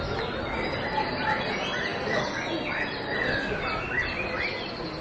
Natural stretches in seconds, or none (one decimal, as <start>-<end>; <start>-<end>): 0.0-5.0